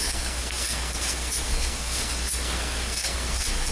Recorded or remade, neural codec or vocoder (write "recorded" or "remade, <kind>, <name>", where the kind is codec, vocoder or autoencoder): remade, codec, SNAC